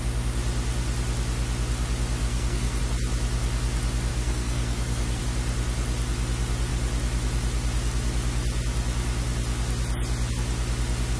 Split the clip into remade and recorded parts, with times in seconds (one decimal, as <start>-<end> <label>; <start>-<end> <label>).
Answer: 0.0-2.2 recorded; 2.2-2.8 remade; 2.8-4.1 recorded; 4.1-5.2 remade; 5.2-11.2 recorded